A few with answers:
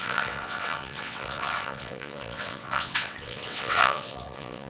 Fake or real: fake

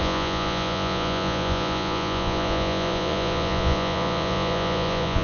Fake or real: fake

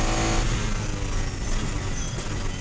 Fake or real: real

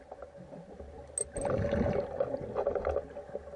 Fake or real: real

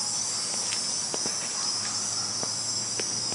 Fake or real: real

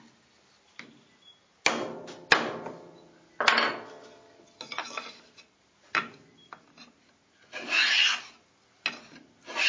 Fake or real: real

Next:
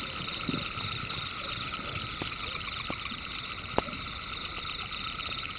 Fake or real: real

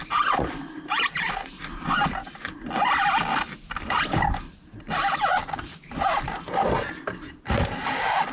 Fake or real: real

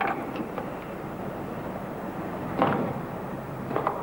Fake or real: real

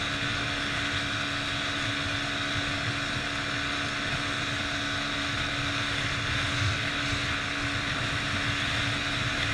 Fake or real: real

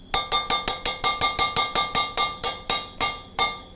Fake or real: real